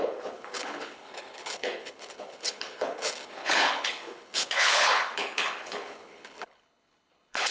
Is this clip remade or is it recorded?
remade